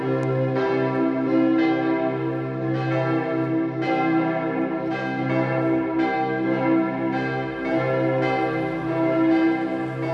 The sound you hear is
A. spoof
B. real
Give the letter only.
B